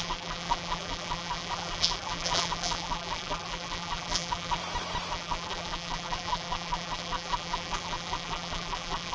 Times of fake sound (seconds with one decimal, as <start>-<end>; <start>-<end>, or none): 0.0-4.6; 5.1-9.1